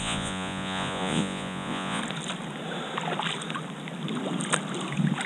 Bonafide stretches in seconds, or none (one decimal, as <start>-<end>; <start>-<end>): 2.0-5.3